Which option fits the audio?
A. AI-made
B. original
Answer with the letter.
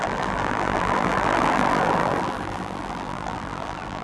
A